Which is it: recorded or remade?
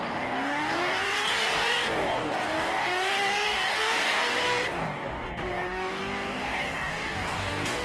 remade